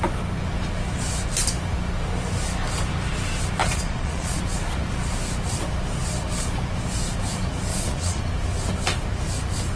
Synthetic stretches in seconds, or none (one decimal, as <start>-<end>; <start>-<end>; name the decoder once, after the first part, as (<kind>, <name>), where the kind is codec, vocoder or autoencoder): 3.6-4.4 (vocoder, Vocos); 7.7-8.2

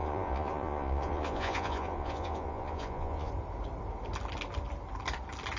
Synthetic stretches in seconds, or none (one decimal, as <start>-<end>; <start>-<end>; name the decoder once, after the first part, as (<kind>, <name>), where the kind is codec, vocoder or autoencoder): 0.0-3.3 (vocoder, Vocos)

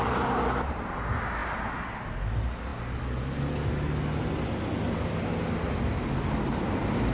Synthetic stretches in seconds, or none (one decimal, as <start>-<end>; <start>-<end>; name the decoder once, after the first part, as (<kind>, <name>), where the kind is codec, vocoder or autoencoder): none

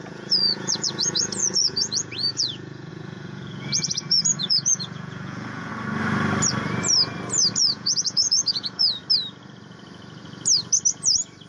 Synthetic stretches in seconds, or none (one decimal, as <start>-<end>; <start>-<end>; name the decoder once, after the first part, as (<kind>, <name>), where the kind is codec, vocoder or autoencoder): 0.0-5.7 (vocoder, Vocos); 7.5-9.0

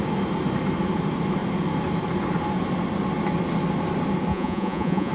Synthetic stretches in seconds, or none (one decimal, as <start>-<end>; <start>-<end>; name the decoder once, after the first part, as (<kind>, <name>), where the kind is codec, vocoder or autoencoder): 4.3-5.1 (vocoder, Vocos)

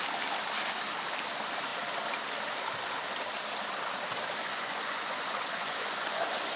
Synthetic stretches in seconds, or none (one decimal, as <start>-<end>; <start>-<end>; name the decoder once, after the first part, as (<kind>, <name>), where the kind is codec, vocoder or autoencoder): 4.4-6.6 (vocoder, Vocos)

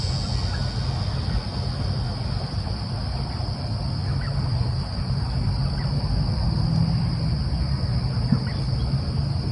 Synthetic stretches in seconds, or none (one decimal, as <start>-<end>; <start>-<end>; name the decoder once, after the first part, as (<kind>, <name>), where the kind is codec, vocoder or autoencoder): none